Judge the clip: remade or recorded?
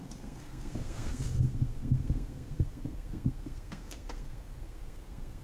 remade